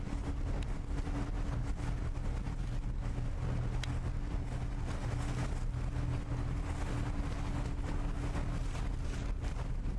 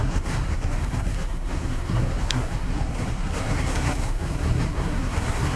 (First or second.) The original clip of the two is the first